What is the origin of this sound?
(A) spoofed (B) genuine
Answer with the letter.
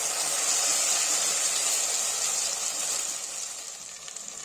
B